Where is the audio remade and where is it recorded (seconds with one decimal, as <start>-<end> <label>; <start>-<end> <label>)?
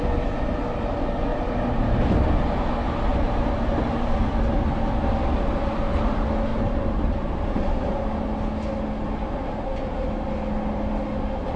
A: 0.0-1.3 recorded; 1.3-2.4 remade; 2.4-3.1 recorded; 3.1-4.3 remade; 4.3-6.5 recorded; 6.5-8.0 remade; 8.0-11.6 recorded